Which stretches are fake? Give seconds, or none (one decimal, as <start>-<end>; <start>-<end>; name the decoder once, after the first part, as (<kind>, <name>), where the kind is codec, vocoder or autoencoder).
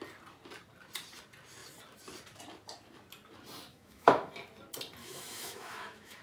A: 3.7-4.3 (autoencoder, DAC-VAE); 5.0-6.2